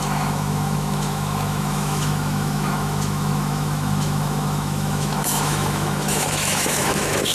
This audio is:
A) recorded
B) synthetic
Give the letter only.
B